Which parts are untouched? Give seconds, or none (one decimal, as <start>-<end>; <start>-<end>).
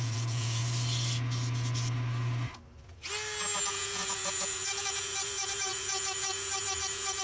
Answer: 0.6-3.7